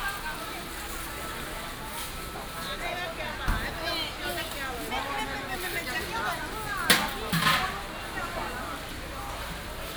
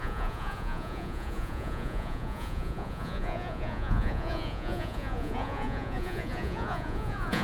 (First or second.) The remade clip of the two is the second